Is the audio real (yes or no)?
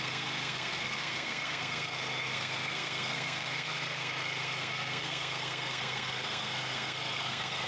no